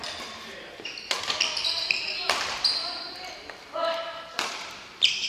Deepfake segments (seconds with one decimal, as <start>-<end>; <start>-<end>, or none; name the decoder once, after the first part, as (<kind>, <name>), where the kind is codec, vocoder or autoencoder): 1.8-5.3 (vocoder, BigVGAN v2)